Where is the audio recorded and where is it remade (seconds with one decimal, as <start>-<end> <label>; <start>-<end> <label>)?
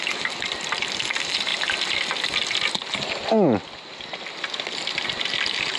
0.0-5.8 recorded